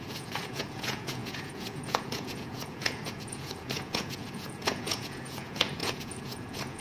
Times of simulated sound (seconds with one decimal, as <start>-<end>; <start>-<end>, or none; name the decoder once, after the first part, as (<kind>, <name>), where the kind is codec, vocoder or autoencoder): 0.0-6.8 (vocoder, Vocos)